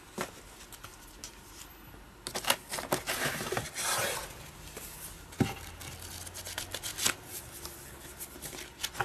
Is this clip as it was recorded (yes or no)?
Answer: yes